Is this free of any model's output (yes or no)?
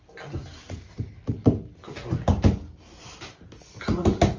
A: yes